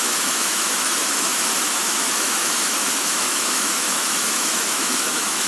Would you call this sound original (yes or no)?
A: no